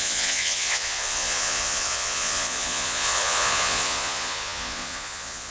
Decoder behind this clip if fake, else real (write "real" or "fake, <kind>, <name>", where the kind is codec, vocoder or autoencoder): fake, vocoder, Vocos